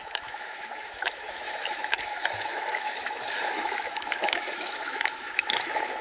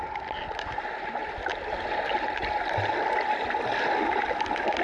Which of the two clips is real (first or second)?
second